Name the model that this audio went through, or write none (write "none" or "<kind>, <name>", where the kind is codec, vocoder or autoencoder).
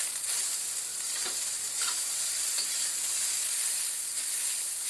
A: none